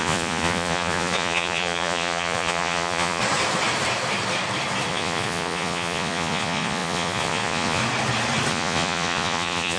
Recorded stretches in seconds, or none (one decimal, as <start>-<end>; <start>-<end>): 3.2-4.9; 7.8-8.5